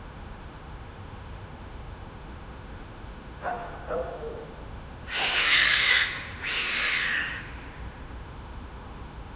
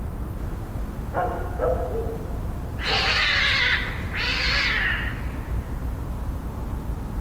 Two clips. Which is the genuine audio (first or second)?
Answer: second